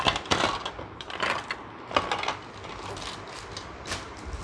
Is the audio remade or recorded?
recorded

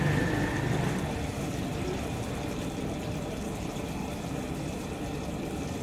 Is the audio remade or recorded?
recorded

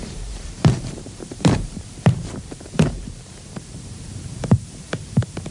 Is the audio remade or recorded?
remade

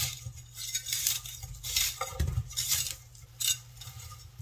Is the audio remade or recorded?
remade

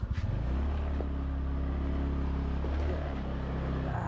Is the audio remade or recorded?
recorded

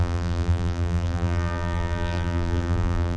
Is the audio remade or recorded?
remade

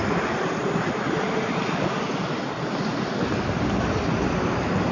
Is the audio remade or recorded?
recorded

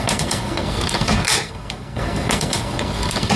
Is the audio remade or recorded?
remade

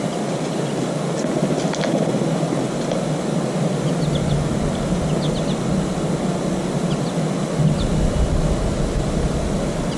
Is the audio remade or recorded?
recorded